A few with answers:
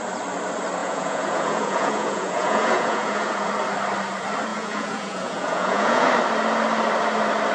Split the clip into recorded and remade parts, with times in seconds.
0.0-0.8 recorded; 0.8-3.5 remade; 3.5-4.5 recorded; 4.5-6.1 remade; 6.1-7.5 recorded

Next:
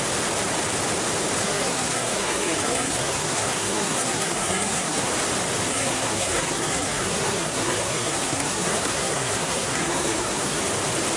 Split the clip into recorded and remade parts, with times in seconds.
0.0-1.4 recorded; 1.4-5.1 remade; 5.1-5.7 recorded; 5.7-10.6 remade; 10.6-11.2 recorded

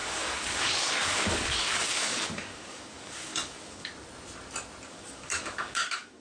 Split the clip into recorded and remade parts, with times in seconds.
0.0-3.9 remade; 3.9-4.9 recorded; 4.9-6.2 remade

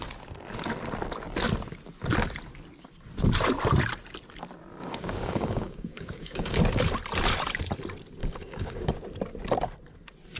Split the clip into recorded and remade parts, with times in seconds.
0.0-4.8 recorded; 4.8-6.6 remade; 6.6-8.2 recorded; 8.2-8.9 remade; 8.9-10.4 recorded